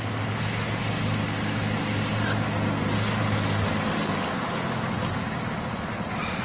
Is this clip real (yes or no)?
yes